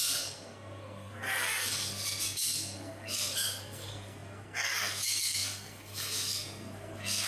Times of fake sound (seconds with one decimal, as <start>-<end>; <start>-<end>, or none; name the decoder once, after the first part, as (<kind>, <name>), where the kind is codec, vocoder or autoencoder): 0.0-7.3 (codec, SNAC)